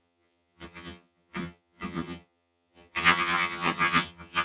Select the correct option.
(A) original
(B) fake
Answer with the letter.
B